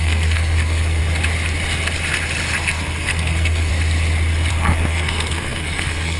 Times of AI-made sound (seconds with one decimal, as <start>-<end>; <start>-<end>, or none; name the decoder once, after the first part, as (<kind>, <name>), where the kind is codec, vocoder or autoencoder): 0.0-1.0 (codec, SNAC); 2.7-3.7; 4.5-6.2